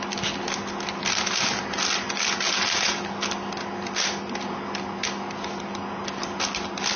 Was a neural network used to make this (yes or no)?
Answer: no